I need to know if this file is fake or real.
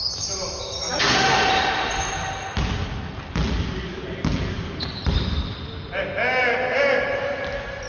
real